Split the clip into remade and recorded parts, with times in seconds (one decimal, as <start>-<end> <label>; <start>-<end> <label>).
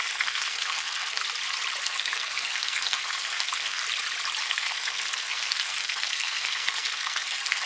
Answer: 0.0-1.2 remade; 1.2-1.8 recorded; 1.8-3.8 remade; 3.8-4.4 recorded; 4.4-7.7 remade